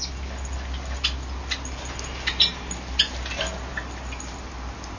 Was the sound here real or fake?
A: real